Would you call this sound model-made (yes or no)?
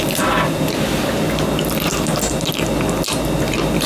no